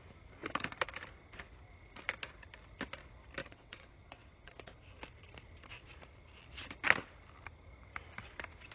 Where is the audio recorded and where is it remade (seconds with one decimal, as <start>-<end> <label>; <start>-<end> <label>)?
0.0-3.4 recorded; 3.4-4.9 remade; 4.9-8.7 recorded